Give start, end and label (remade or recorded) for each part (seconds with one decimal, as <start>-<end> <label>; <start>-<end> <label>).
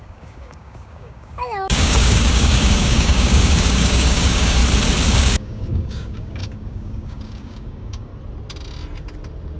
0.0-4.6 remade; 4.6-5.2 recorded; 5.2-8.1 remade; 8.1-9.6 recorded